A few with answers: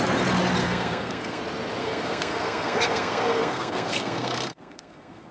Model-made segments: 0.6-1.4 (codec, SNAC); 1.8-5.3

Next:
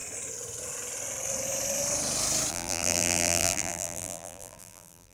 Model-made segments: 2.5-5.1 (vocoder, BigVGAN v2)

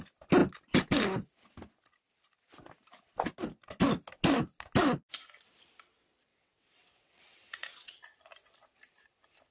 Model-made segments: 6.3-8.0 (vocoder, WaveNeXt)

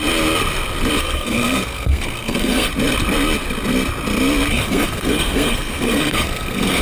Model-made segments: 1.0-2.7 (codec, SNAC); 4.5-6.8

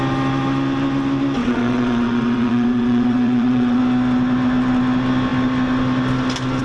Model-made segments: 1.4-3.8 (vocoder, WaveNeXt)

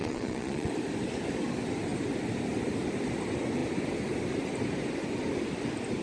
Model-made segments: 0.0-0.7 (vocoder, Vocos)

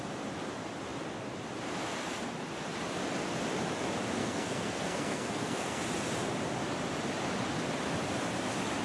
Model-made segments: 4.2-5.8 (codec, SNAC)

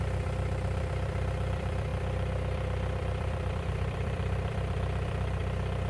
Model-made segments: 0.0-5.4 (vocoder, BigVGAN v2)